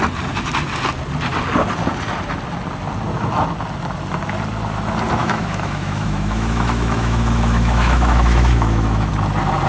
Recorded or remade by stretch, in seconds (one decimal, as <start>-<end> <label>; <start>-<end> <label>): 0.0-5.2 recorded; 5.2-9.1 remade; 9.1-9.7 recorded